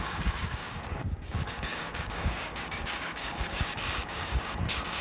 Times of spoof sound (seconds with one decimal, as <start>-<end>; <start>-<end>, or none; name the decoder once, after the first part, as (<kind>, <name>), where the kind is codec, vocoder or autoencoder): 0.0-5.0 (codec, DAC)